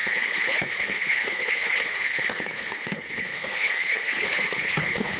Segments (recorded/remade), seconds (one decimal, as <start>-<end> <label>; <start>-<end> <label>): 0.0-5.2 remade